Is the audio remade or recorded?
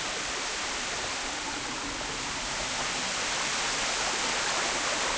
recorded